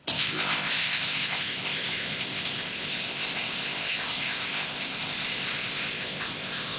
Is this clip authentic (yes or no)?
no